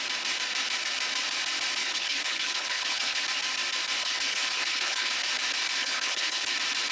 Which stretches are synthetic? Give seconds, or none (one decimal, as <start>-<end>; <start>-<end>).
1.8-3.2; 4.0-5.1; 5.8-6.5